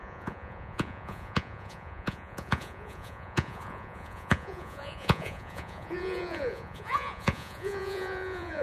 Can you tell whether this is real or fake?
fake